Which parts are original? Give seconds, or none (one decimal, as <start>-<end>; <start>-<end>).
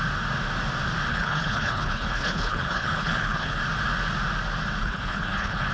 0.0-1.1; 3.6-4.8